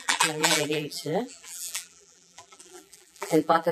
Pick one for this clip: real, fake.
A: fake